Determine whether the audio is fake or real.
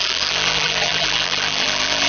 fake